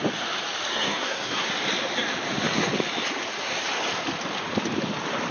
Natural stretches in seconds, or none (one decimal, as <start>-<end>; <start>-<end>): 0.0-0.7; 1.5-5.3